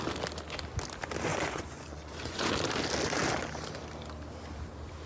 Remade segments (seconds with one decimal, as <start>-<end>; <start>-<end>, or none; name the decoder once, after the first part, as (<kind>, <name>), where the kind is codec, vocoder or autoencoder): 1.3-2.5 (vocoder, Vocos)